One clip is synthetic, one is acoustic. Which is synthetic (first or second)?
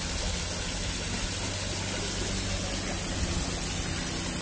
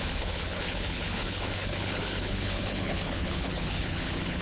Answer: second